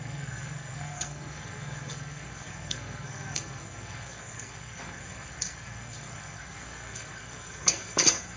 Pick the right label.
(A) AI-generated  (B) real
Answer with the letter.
A